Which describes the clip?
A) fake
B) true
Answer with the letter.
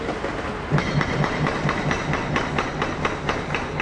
B